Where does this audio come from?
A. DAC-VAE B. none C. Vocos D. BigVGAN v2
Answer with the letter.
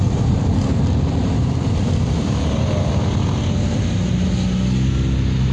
B